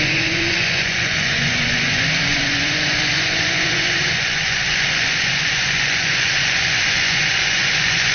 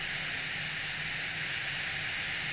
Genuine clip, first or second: second